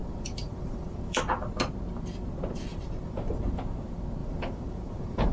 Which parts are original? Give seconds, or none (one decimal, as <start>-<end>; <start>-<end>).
1.2-2.7; 3.3-4.2

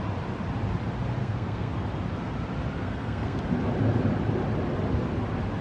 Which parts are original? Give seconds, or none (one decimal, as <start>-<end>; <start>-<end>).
0.0-1.2; 1.7-2.8; 3.4-5.6

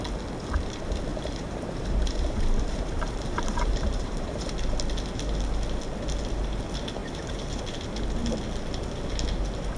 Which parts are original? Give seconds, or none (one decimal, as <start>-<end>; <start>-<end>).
0.0-1.1; 4.5-7.0; 7.6-9.8

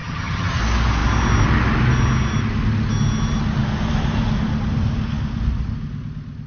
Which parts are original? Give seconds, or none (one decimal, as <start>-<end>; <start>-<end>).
0.6-6.5

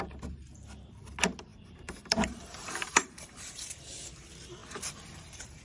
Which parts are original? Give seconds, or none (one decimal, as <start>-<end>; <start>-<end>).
0.0-1.5; 4.1-4.6

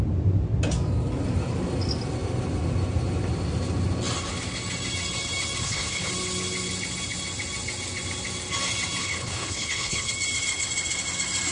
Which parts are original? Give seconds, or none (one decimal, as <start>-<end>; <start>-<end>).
0.0-5.6; 6.1-9.0; 10.1-11.5

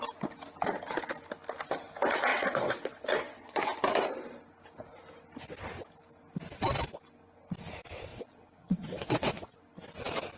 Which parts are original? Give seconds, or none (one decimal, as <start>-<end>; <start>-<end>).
0.0-2.3; 3.6-8.1; 9.6-10.4